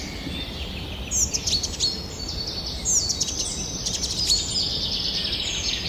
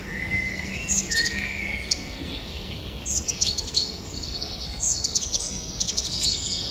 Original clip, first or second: first